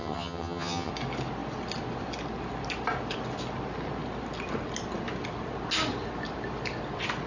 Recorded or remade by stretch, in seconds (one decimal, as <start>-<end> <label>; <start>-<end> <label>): 0.0-0.9 remade; 0.9-7.3 recorded